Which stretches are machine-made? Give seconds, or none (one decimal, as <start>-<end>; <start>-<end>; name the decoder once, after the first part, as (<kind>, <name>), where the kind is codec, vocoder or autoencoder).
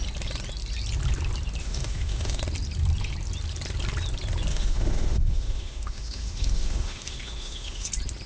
1.6-2.4 (autoencoder, DAC-VAE); 4.5-7.9